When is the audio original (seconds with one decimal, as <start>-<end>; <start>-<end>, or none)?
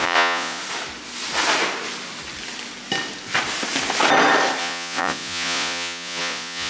0.6-4.6